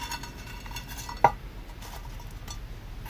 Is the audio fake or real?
real